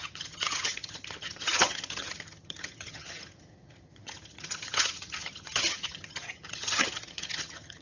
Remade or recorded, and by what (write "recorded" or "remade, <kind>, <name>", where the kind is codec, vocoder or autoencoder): remade, vocoder, HiFi-GAN